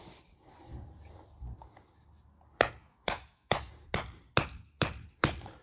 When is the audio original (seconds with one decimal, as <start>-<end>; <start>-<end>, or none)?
0.0-2.8; 3.7-5.6